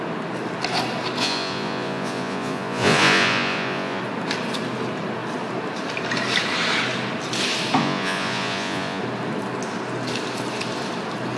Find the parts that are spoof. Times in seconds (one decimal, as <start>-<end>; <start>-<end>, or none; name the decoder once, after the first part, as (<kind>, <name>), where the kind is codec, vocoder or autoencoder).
1.2-4.0 (vocoder, Vocos); 7.8-9.0